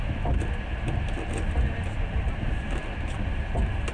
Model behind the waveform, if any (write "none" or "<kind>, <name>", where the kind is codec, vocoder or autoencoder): none